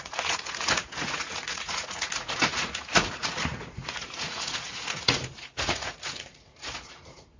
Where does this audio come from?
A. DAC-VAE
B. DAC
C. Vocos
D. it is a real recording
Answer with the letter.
C